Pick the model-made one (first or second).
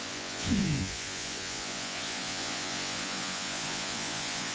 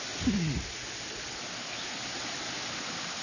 first